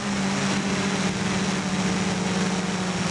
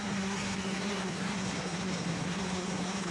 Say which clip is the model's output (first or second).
second